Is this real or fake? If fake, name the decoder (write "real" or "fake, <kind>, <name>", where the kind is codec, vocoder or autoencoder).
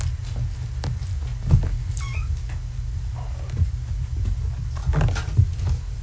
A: real